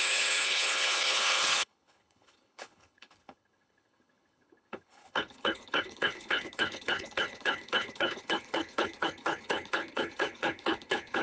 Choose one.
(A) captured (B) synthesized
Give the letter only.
B